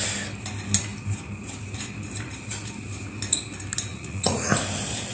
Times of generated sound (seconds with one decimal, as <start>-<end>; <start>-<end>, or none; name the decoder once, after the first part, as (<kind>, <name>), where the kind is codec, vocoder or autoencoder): 3.9-4.5 (vocoder, Vocos)